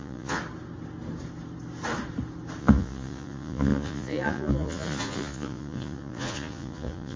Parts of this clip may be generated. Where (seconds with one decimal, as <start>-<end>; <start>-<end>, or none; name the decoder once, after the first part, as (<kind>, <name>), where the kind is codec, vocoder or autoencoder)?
0.0-0.4 (vocoder, Vocos); 2.6-7.2